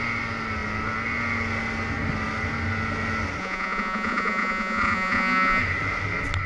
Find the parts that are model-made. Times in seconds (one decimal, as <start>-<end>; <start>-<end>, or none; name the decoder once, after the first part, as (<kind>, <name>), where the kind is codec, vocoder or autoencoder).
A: 3.4-5.6 (vocoder, Vocos)